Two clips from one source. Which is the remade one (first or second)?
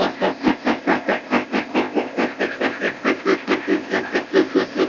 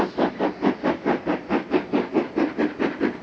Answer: first